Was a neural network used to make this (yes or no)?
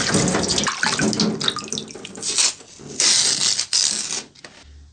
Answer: no